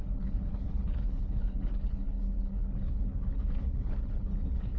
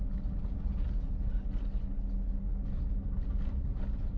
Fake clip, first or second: first